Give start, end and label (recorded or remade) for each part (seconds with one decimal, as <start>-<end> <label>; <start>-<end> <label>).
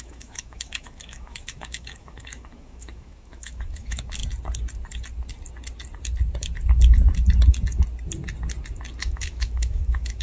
0.0-4.2 remade; 4.2-9.0 recorded; 9.0-10.2 remade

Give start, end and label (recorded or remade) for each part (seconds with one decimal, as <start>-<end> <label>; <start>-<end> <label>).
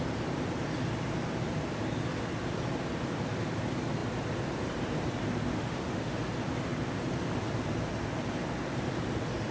0.0-5.5 recorded; 5.5-6.2 remade; 6.2-9.5 recorded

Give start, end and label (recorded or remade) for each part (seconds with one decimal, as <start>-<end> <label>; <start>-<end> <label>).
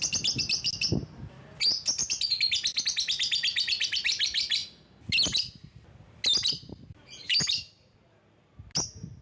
0.0-9.2 recorded